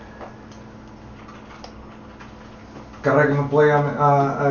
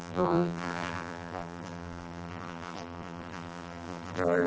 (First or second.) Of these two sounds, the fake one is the second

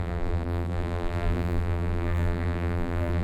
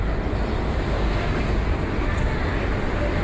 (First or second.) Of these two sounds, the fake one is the first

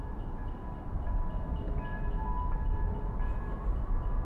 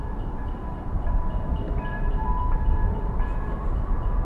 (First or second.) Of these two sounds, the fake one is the second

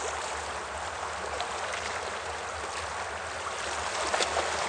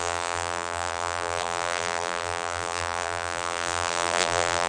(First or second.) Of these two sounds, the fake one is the second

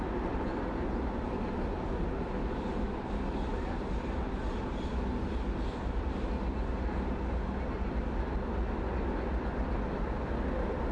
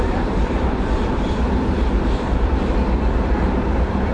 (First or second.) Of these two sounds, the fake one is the second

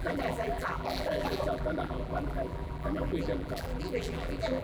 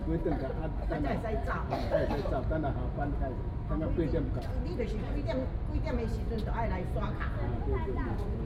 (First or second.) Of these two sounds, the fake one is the first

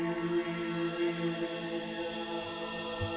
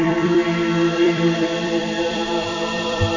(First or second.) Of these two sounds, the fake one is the second